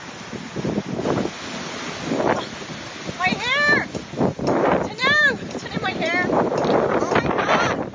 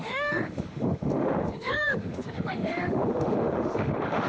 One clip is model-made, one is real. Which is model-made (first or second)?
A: second